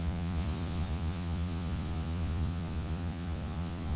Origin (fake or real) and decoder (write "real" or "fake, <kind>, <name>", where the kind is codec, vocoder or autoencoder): fake, vocoder, Vocos